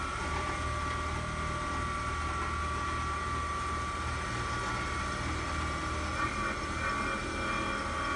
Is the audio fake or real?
real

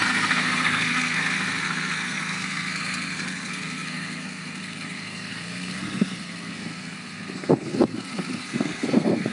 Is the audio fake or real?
fake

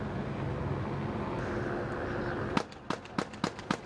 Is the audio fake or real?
real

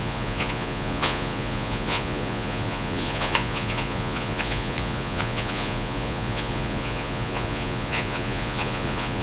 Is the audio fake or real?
fake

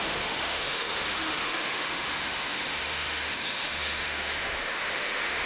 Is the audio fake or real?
fake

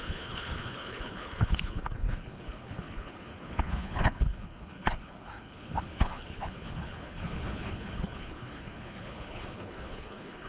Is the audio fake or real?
fake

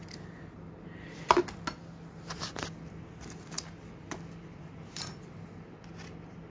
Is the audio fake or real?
real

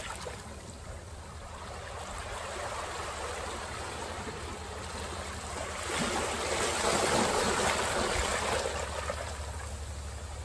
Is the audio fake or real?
real